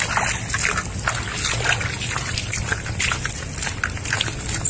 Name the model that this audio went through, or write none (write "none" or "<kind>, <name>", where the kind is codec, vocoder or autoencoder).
none